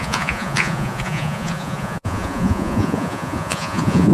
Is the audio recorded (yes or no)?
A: no